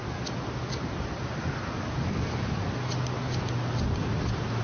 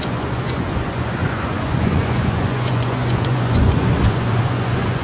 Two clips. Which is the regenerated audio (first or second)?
second